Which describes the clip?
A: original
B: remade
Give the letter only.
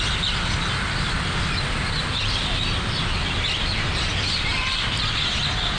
A